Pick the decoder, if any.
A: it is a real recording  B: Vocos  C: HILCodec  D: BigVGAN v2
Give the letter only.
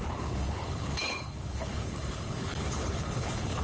C